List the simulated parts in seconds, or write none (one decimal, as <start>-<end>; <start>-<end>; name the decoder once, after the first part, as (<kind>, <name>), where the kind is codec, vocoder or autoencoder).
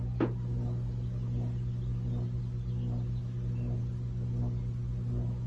none